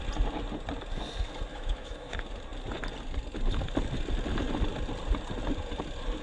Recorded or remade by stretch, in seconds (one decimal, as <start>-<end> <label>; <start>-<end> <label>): 0.0-1.5 recorded; 1.5-2.1 remade; 2.1-6.2 recorded

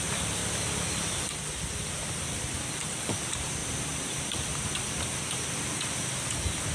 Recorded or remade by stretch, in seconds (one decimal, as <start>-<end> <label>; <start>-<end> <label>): 0.0-6.7 remade